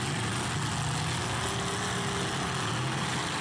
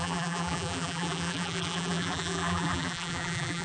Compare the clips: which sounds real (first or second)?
first